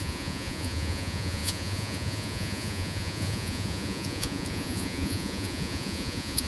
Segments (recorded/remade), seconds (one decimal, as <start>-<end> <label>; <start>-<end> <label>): 0.0-6.5 remade